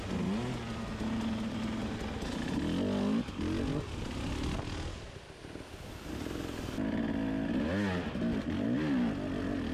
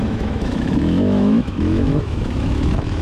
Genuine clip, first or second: first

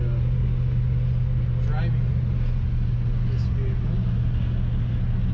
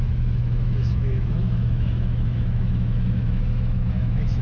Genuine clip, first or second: first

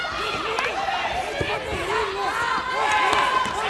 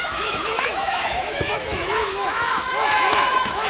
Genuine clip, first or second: first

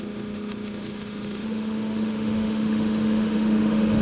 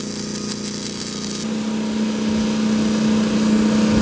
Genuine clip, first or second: second